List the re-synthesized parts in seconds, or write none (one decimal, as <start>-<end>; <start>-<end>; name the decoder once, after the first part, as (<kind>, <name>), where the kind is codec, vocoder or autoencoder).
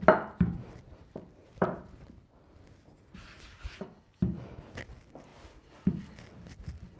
1.4-2.2 (vocoder, BigVGAN v2); 5.3-6.0